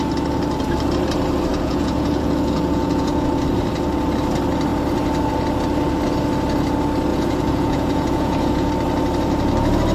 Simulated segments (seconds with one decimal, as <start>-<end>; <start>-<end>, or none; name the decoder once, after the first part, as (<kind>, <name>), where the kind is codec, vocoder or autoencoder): 1.5-3.3 (vocoder, Vocos); 7.1-8.7